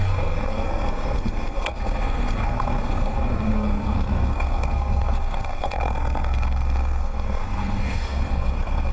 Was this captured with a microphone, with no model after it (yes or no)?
no